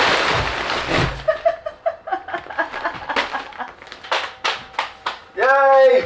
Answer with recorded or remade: recorded